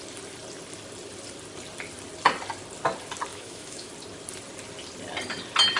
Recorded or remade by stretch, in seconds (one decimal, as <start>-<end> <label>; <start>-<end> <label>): 0.0-3.3 recorded; 3.3-3.9 remade; 3.9-5.8 recorded